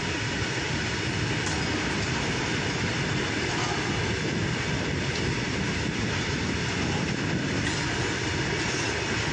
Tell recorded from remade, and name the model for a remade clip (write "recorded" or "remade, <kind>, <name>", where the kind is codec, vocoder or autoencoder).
recorded